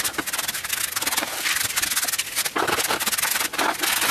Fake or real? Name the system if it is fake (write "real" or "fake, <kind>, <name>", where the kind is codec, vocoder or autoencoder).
real